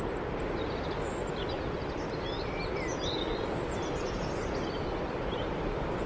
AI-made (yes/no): no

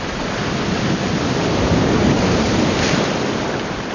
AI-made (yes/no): no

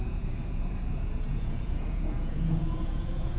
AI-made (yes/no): yes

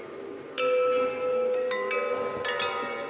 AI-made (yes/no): no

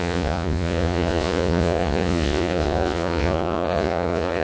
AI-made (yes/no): yes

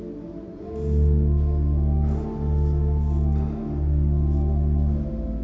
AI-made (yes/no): no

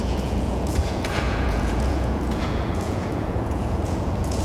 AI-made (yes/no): yes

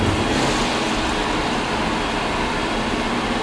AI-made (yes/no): no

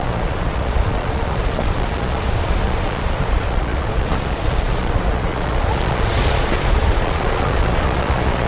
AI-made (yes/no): yes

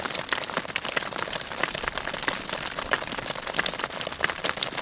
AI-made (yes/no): no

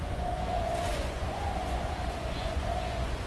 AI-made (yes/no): yes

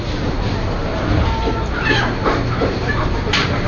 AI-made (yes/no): no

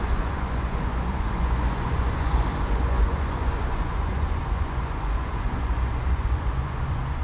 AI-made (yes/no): yes